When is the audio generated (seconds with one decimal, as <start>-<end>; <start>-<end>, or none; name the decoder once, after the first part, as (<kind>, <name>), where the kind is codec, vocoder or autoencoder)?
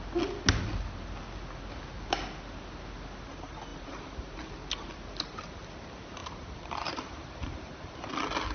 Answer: 3.7-4.4 (vocoder, BigVGAN v2); 6.2-7.9